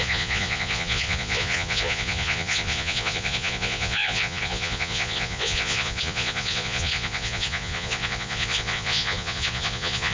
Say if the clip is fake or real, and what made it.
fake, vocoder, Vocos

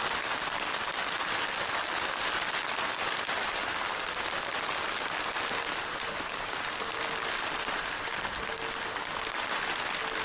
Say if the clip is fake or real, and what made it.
real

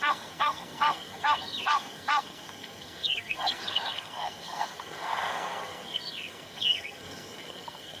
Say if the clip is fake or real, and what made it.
fake, codec, SNAC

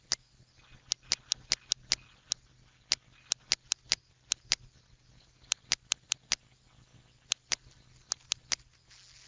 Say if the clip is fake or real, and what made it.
real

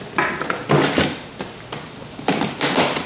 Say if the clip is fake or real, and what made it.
real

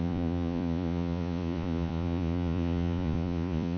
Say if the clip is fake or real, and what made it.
fake, vocoder, Vocos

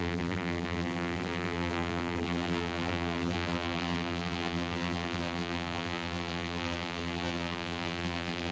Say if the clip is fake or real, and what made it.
fake, vocoder, BigVGAN v2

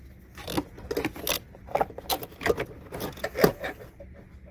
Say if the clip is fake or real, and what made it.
real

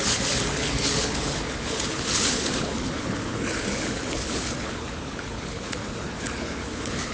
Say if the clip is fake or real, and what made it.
fake, codec, HILCodec